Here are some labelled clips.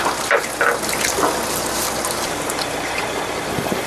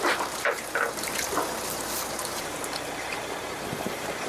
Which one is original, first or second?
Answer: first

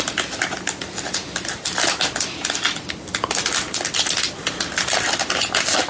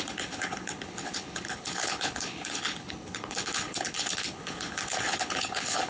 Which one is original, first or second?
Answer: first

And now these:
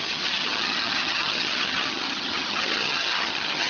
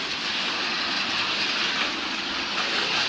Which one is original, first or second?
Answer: second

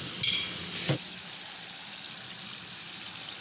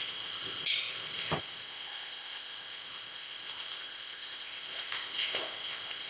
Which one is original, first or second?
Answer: first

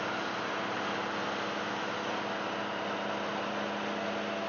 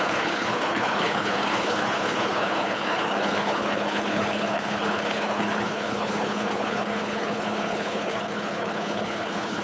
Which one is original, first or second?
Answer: first